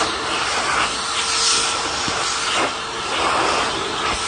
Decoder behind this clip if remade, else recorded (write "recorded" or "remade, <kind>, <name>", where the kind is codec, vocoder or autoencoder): recorded